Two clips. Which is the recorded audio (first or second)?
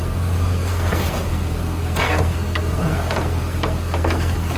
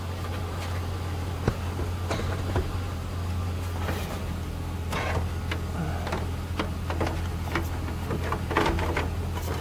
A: second